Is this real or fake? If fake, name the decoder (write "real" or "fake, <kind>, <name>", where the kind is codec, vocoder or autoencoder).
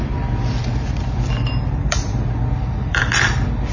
fake, vocoder, BigVGAN v2